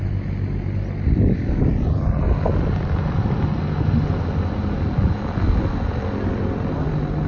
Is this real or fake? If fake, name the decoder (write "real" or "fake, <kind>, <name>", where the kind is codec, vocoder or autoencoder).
real